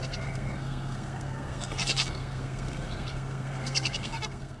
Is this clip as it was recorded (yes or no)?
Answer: no